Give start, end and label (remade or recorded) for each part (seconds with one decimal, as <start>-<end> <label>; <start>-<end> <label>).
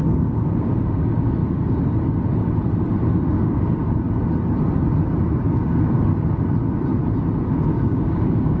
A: 0.0-1.4 remade; 1.4-3.3 recorded; 3.3-3.8 remade; 3.8-5.5 recorded; 5.5-6.1 remade; 6.1-7.5 recorded; 7.5-8.6 remade